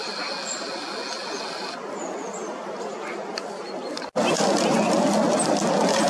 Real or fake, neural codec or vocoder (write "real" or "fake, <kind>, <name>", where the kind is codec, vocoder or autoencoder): real